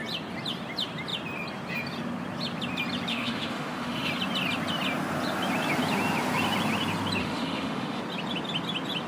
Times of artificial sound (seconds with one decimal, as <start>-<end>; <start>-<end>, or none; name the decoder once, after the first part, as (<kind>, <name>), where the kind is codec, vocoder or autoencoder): 3.1-4.1 (autoencoder, DAC-VAE); 7.2-8.0